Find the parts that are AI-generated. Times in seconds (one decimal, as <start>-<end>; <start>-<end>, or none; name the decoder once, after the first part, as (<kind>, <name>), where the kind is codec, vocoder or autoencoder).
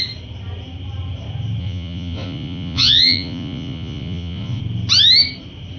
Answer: 1.6-4.6 (vocoder, Vocos)